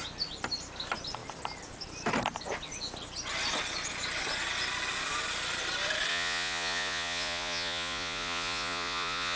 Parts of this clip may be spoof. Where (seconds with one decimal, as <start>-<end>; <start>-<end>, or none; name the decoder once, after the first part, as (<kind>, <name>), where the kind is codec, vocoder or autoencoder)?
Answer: 6.1-9.4 (vocoder, Vocos)